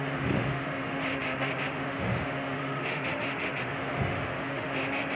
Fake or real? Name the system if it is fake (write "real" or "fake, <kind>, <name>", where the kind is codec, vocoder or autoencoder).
fake, autoencoder, DAC-VAE